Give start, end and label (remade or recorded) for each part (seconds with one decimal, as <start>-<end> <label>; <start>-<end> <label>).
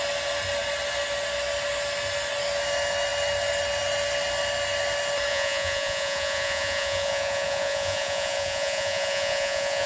0.0-5.3 recorded; 5.3-9.9 remade